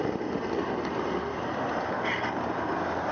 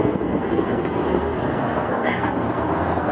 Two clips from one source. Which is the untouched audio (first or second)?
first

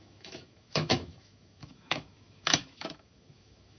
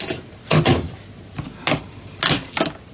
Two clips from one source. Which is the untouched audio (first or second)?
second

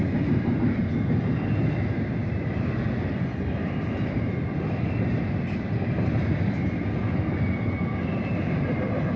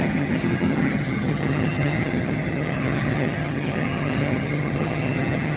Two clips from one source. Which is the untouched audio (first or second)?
first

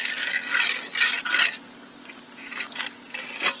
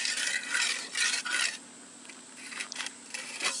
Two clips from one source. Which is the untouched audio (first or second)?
first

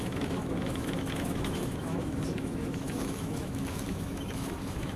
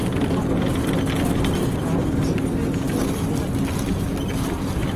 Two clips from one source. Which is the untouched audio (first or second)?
second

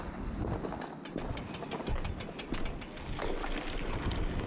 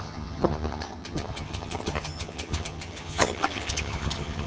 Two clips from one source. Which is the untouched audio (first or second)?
first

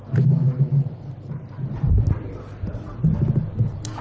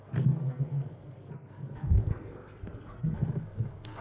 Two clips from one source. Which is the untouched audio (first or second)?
first